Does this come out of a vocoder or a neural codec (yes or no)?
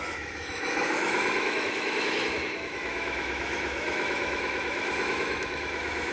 yes